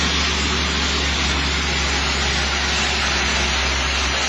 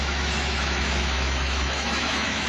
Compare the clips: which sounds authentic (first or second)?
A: first